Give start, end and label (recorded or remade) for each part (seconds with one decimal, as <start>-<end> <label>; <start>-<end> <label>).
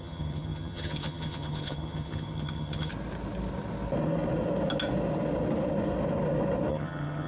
0.0-2.9 remade; 2.9-6.7 recorded; 6.7-7.3 remade